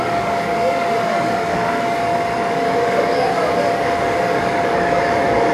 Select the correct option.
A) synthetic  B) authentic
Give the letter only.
A